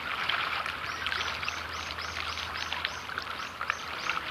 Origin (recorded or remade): recorded